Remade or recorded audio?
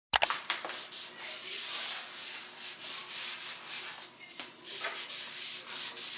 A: recorded